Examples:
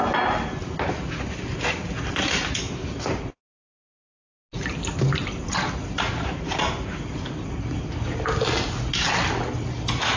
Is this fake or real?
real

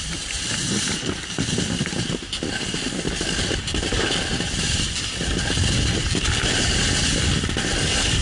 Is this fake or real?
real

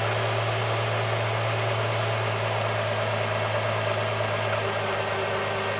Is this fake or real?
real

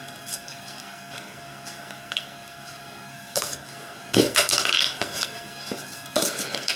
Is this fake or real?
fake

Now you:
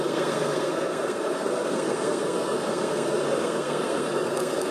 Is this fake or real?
fake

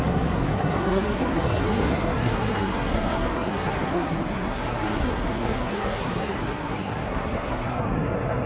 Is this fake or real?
fake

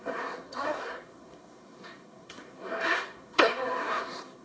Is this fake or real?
fake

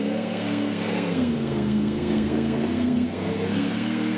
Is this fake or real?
fake